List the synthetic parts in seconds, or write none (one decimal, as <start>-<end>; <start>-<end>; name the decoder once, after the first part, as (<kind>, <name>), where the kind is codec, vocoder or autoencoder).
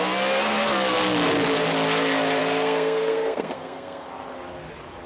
2.4-4.1 (codec, SNAC)